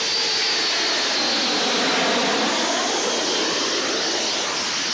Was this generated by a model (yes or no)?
no